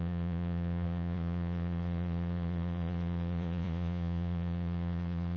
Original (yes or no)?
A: no